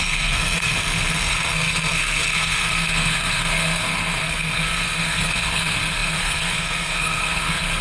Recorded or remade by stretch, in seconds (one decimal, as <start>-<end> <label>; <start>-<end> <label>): 0.0-7.8 remade